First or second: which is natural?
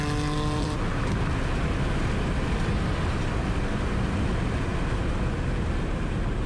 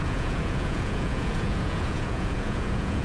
first